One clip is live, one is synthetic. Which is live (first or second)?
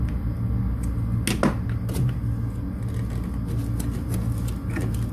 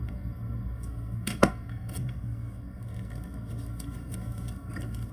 first